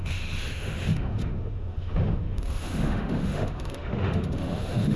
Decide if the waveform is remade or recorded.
remade